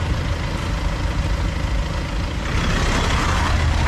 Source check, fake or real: real